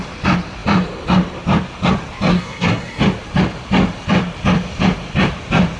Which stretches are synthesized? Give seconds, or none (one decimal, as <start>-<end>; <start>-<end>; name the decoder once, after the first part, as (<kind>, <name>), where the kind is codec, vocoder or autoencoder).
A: 2.3-3.0 (codec, SNAC)